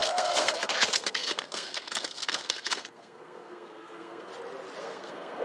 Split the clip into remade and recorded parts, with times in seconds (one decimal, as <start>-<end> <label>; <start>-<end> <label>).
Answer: 0.0-4.3 remade; 4.3-4.8 recorded; 4.8-5.4 remade